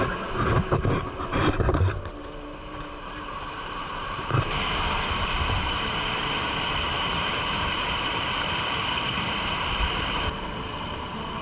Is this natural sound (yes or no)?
no